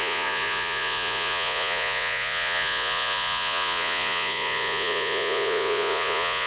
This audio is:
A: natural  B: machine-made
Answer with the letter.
B